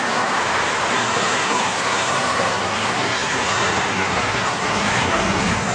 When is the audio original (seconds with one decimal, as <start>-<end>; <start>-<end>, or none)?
0.4-0.9